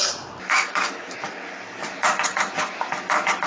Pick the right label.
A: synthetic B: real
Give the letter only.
B